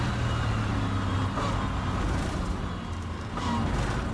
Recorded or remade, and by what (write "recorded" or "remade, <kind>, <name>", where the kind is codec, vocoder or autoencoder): recorded